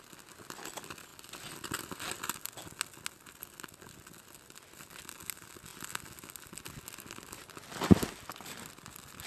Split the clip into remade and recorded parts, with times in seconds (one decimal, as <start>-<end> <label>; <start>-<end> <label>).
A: 0.0-9.3 recorded